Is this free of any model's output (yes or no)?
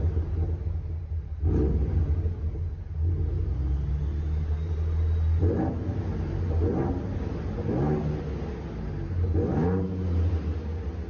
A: yes